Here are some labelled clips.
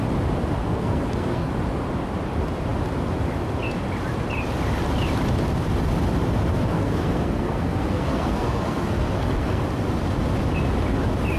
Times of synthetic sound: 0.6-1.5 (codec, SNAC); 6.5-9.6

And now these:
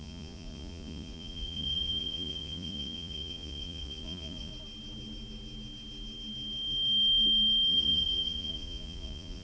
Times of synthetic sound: 0.0-4.5 (vocoder, Vocos); 7.7-9.4

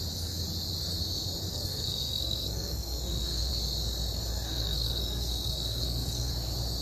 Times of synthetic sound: 1.5-3.5 (codec, SNAC); 4.3-6.3

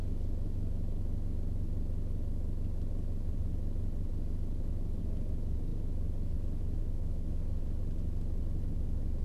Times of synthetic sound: 6.8-7.6 (codec, SNAC)

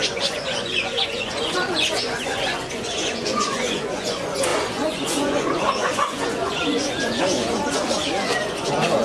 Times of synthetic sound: 0.0-9.0 (vocoder, Vocos)